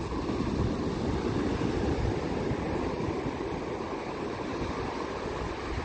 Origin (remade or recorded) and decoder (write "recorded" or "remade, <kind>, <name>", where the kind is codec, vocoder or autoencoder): recorded